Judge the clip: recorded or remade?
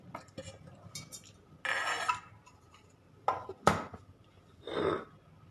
recorded